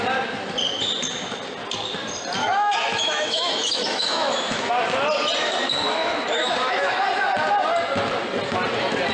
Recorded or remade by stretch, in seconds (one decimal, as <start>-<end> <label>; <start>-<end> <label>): 0.0-2.4 recorded; 2.4-4.7 remade; 4.7-5.4 recorded; 5.4-6.9 remade; 6.9-9.1 recorded